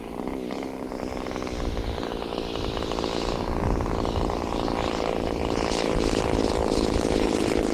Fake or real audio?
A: real